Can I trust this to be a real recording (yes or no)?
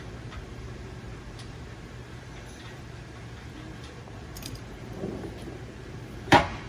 no